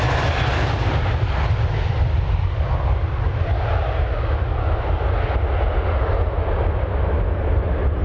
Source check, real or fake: real